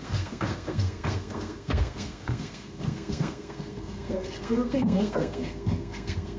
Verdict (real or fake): fake